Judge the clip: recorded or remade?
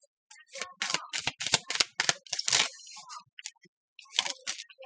recorded